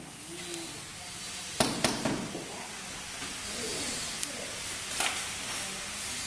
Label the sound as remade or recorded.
recorded